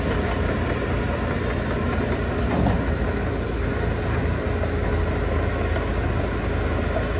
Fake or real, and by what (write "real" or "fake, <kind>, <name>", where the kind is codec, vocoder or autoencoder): real